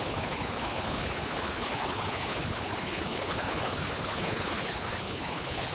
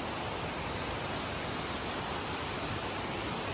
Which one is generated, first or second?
first